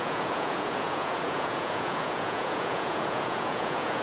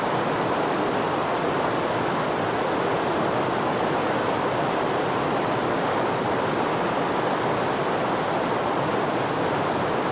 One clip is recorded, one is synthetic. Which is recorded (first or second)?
second